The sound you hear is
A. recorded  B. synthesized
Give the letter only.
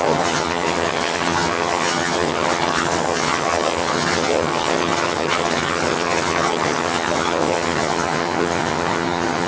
B